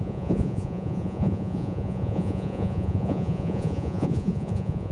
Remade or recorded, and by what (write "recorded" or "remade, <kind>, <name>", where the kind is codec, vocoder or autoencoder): remade, vocoder, Vocos